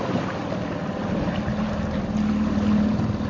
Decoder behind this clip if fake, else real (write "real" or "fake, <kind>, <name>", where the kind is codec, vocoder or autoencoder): real